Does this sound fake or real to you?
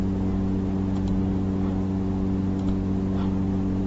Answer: real